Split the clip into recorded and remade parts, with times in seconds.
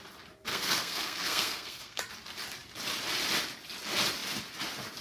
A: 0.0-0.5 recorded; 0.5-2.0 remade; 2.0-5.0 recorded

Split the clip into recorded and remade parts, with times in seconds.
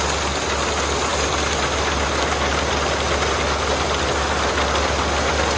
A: 0.0-5.6 recorded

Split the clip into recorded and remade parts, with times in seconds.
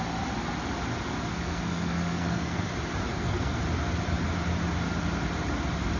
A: 0.0-1.3 recorded; 1.3-2.7 remade; 2.7-3.1 recorded; 3.1-3.6 remade; 3.6-6.0 recorded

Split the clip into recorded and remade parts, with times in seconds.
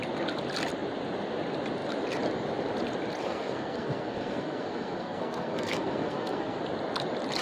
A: 0.0-3.2 recorded; 3.2-6.6 remade; 6.6-7.4 recorded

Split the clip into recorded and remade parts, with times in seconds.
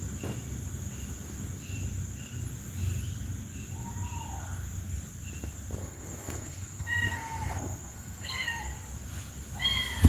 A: 0.0-5.8 recorded; 5.8-8.6 remade; 8.6-10.1 recorded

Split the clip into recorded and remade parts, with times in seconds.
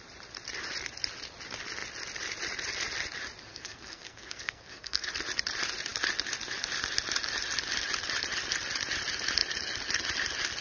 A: 0.0-3.5 recorded; 3.5-5.1 remade; 5.1-10.6 recorded